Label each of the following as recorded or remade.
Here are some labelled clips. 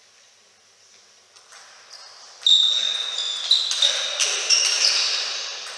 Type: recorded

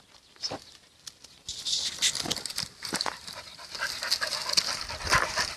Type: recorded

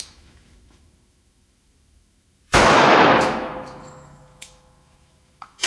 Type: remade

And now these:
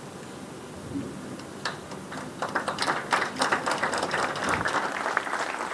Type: recorded